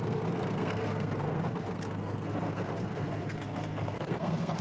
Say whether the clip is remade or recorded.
remade